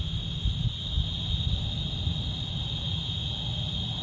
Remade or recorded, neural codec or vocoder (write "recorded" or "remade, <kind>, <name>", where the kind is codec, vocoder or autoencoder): recorded